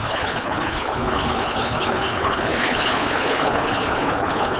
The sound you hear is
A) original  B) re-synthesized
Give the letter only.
B